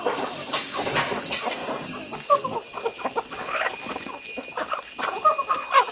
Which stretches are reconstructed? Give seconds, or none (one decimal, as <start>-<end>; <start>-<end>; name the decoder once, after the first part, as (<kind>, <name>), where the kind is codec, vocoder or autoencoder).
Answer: none